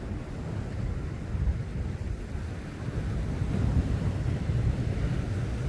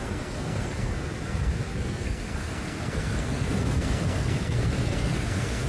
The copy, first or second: second